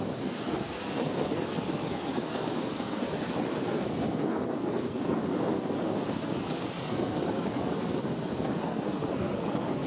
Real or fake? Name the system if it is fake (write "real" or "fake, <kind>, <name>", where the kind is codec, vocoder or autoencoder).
fake, codec, SNAC